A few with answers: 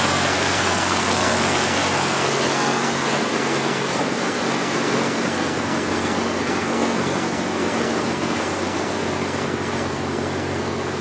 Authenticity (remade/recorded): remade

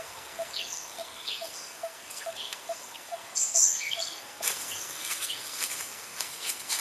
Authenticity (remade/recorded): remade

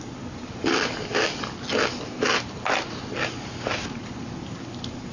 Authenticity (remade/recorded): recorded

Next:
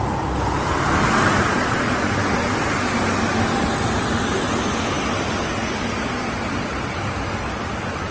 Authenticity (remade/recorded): recorded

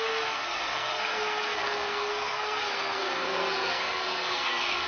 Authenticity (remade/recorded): remade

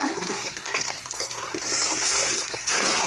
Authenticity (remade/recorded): remade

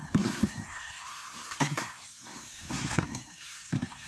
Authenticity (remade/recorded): remade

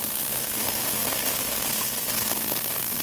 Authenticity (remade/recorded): remade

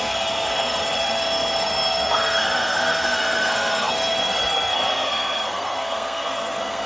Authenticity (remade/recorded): remade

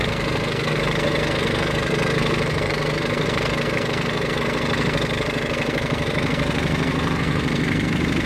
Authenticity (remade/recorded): remade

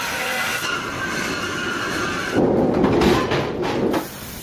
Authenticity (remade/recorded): recorded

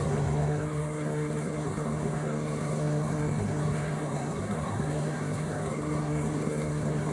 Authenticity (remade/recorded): remade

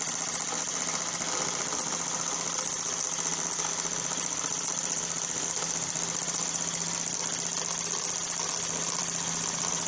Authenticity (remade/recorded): recorded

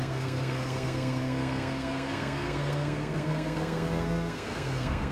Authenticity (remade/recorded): remade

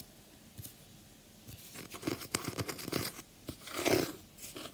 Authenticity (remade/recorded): recorded